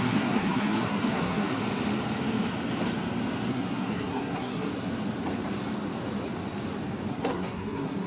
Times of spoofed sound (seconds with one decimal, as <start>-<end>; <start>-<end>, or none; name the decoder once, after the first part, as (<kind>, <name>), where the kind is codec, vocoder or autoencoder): 0.0-1.6 (codec, SNAC); 3.5-4.7; 7.1-8.1